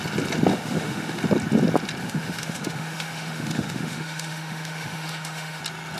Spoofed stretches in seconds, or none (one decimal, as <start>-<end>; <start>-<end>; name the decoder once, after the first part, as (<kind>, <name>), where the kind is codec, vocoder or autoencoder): 0.5-1.2 (autoencoder, DAC-VAE); 2.0-5.6